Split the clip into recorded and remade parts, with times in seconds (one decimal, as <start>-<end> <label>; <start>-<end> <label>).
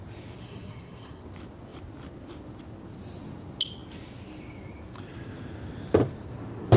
0.0-0.4 recorded; 0.4-1.2 remade; 1.2-6.8 recorded